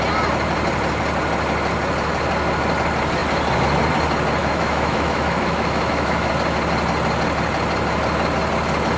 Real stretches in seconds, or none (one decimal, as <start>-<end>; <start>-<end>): 0.0-4.4; 6.3-9.0